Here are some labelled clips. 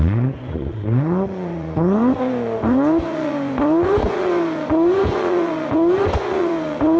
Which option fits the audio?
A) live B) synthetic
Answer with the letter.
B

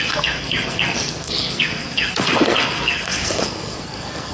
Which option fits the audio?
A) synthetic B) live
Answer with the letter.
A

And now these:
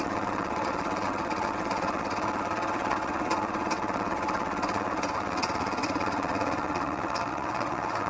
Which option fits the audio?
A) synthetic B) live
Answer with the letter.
A